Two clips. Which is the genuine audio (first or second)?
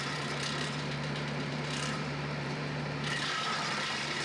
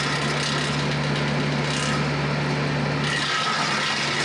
second